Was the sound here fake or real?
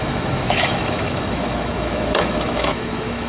fake